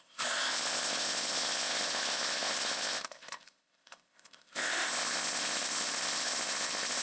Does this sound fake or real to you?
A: fake